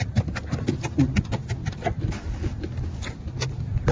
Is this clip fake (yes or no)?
no